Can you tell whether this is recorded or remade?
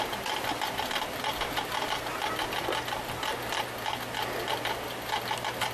recorded